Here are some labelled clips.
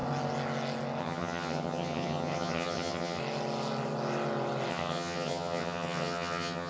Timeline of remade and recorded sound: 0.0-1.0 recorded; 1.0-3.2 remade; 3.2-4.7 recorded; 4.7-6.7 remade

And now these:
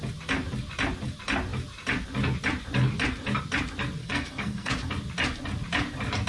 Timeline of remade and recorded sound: 0.0-4.0 recorded; 4.0-4.7 remade; 4.7-6.3 recorded

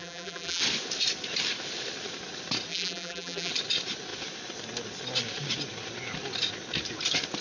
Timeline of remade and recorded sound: 0.0-0.6 remade; 0.6-2.7 recorded; 2.7-3.5 remade; 3.5-7.4 recorded

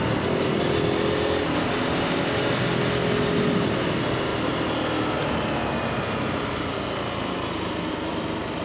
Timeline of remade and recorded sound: 0.0-8.6 recorded

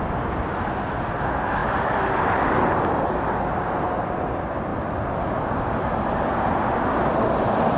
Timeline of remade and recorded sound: 0.0-7.8 recorded